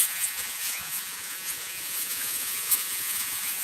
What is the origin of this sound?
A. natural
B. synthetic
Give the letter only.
B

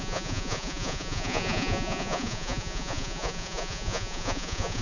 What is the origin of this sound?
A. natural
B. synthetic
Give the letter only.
B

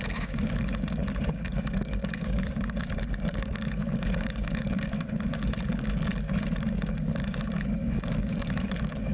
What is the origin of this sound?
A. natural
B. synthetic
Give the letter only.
B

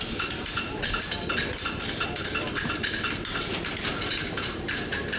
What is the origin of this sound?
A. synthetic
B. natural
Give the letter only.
B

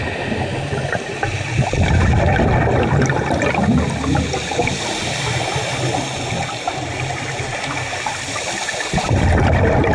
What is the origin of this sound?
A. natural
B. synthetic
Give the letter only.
A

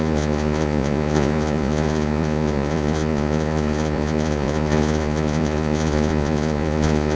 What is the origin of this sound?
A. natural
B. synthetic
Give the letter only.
B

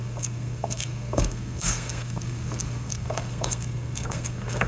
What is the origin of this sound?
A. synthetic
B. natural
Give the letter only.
A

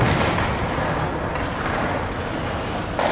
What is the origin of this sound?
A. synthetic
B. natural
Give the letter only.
B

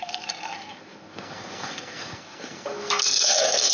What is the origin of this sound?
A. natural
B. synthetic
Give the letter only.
B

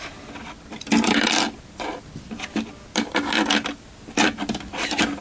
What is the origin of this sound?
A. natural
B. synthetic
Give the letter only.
A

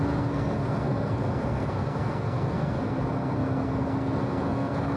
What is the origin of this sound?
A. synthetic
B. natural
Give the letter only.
A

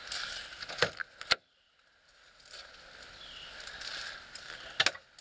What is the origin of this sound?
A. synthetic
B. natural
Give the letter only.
B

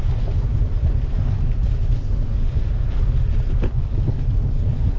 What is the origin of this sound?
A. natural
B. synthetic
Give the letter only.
A